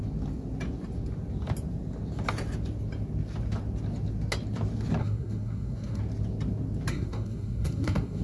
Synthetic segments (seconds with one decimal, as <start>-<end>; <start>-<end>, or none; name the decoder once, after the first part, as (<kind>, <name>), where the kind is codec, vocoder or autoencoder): 5.0-6.0 (codec, SNAC); 6.9-8.2